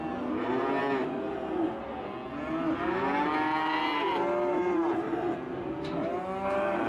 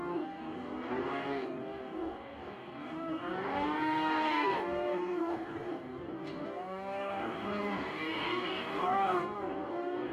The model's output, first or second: second